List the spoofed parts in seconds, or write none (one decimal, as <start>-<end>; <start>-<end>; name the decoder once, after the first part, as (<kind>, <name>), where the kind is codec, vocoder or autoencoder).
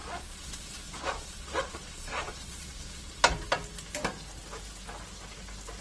0.0-3.2 (vocoder, Vocos)